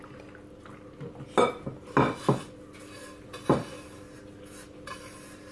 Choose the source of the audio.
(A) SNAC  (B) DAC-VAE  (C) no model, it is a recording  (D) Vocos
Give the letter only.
C